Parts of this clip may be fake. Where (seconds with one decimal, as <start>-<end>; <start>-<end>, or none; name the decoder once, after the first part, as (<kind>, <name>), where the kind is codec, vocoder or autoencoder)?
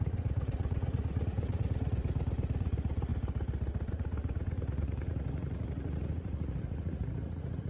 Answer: 0.0-2.0 (vocoder, Vocos); 2.6-3.1; 3.9-7.7